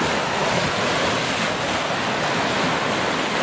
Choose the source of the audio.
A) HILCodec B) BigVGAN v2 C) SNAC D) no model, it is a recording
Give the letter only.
D